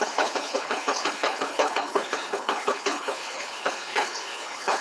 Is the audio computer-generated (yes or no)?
yes